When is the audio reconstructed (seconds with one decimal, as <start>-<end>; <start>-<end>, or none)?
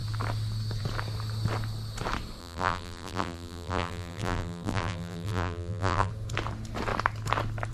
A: 2.4-6.1